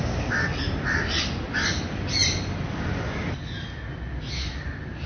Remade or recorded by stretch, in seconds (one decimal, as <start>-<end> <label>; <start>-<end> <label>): 0.0-5.1 recorded